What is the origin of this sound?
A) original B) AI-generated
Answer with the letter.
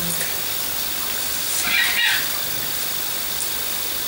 A